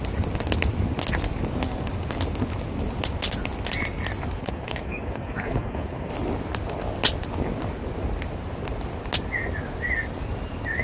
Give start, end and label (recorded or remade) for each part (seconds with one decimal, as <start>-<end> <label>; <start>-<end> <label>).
0.0-4.4 recorded; 4.4-6.1 remade; 6.1-10.8 recorded